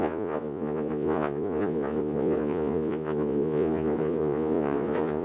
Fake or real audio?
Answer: fake